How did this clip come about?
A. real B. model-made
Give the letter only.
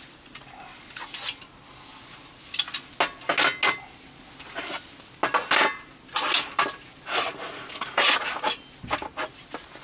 A